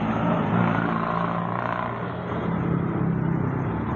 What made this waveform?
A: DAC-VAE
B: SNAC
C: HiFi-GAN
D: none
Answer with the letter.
D